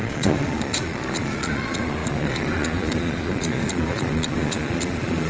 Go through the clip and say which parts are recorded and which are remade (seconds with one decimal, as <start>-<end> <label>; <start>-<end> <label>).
0.0-5.3 remade